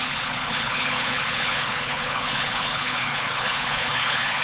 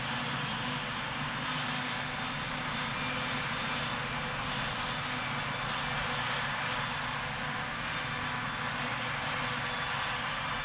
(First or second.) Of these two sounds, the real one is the second